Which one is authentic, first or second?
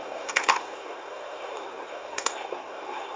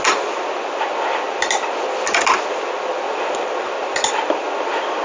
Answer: second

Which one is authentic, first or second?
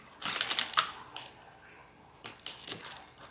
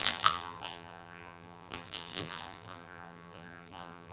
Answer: first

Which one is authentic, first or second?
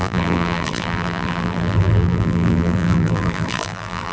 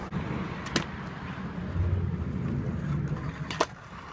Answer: second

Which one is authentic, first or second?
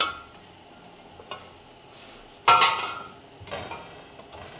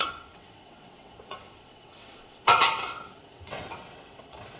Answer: first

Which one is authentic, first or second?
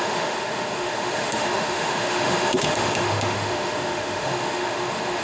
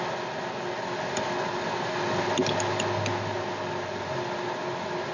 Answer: second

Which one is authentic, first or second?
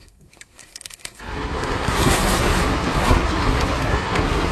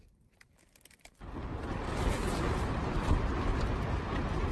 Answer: second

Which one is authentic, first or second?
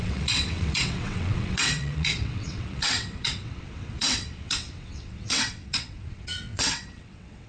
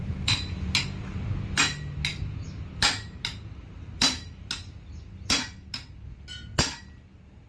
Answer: second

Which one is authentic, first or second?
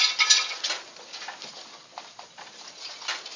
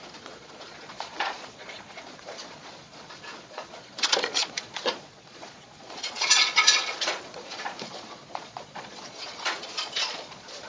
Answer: first